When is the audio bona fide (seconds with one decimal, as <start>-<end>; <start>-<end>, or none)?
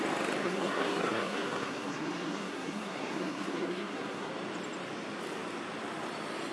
0.0-0.4; 4.3-6.5